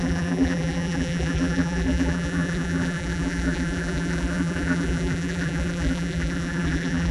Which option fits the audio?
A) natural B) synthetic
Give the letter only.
B